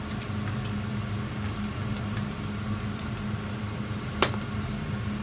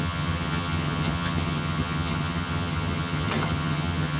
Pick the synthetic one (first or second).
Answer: second